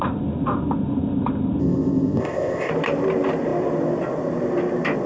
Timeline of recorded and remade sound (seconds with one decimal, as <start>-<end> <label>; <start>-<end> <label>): 0.0-1.6 recorded; 1.6-2.7 remade; 2.7-5.1 recorded